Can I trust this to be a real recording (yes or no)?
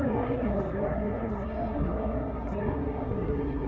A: no